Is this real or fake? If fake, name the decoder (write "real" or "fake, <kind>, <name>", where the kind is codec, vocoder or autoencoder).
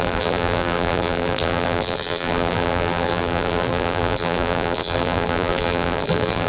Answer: fake, vocoder, BigVGAN v2